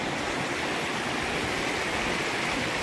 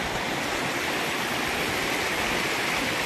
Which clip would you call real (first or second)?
first